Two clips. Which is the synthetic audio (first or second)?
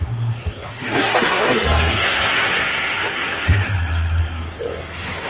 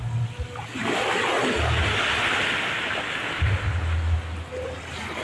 first